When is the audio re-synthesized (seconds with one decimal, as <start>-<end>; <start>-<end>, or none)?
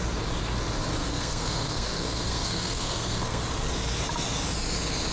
1.0-3.4